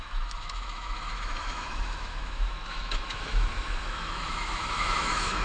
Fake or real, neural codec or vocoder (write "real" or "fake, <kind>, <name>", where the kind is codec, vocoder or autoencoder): fake, autoencoder, DAC-VAE